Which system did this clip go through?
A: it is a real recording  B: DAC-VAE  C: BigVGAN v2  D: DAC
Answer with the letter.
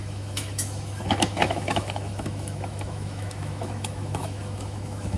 B